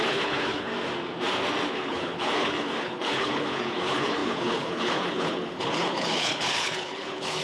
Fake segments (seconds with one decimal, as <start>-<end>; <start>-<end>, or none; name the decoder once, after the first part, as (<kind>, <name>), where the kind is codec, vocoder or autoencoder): 0.0-0.7 (codec, HILCodec); 1.7-7.4